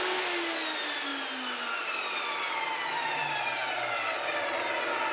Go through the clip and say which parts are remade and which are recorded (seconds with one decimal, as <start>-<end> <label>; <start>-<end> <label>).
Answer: 0.0-5.1 recorded